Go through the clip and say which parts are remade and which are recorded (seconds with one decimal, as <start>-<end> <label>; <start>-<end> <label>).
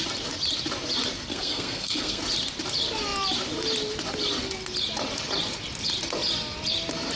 0.0-1.3 recorded; 1.3-2.2 remade; 2.2-7.2 recorded